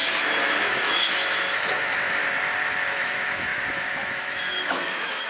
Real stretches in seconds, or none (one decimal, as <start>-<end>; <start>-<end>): 0.0-0.6; 2.2-2.9